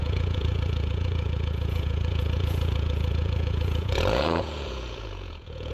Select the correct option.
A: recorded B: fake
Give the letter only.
B